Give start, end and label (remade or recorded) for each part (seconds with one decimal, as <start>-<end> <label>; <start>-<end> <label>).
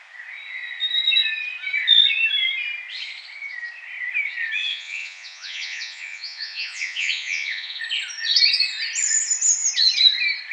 0.0-4.7 recorded; 4.7-7.8 remade; 7.8-10.5 recorded